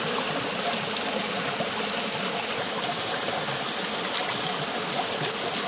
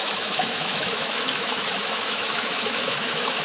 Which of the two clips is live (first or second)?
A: first